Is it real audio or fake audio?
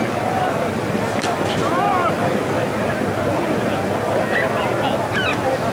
real